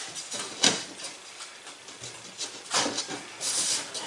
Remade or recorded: recorded